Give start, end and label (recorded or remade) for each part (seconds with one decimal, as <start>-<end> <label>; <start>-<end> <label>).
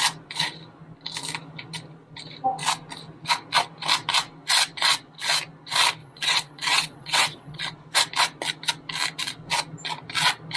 0.0-6.0 recorded; 6.0-7.6 remade; 7.6-10.6 recorded